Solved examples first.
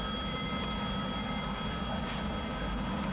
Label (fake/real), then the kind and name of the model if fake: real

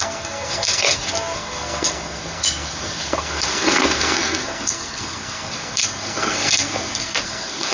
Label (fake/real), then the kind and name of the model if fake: fake, codec, SNAC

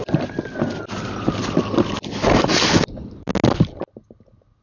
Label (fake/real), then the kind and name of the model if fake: real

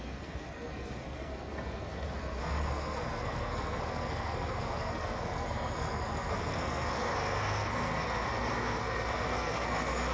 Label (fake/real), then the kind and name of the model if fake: fake, codec, SNAC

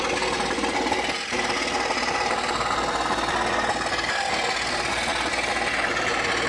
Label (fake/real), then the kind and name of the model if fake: real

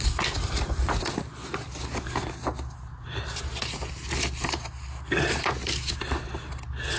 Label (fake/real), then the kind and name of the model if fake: real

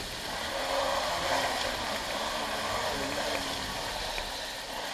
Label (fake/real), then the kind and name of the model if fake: real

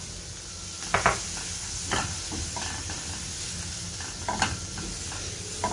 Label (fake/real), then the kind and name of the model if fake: real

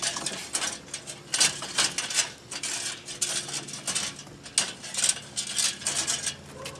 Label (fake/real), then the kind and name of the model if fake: real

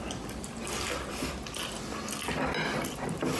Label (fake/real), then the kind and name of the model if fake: real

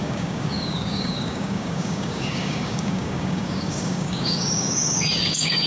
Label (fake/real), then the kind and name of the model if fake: fake, codec, DAC